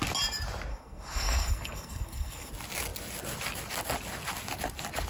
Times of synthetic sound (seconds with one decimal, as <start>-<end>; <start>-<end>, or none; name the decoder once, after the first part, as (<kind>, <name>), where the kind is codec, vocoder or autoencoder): 0.7-2.5 (codec, SNAC)